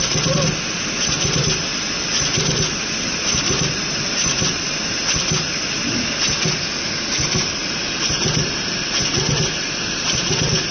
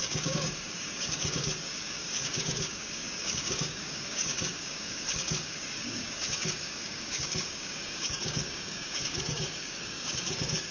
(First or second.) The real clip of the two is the first